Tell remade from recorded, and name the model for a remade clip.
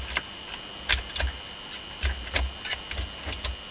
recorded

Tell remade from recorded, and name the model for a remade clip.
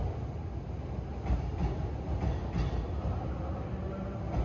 recorded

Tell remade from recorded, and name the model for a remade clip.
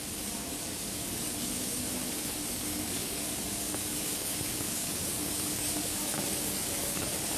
remade, codec, DAC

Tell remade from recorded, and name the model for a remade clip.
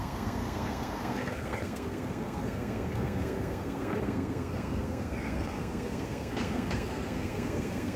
remade, codec, SNAC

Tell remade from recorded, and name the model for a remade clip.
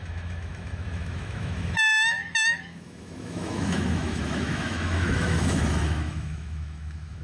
remade, autoencoder, DAC-VAE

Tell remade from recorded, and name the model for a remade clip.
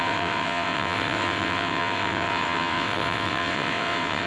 remade, vocoder, WaveNeXt